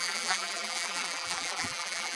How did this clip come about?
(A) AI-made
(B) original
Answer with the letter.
A